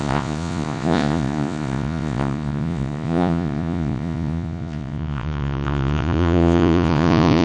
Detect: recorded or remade remade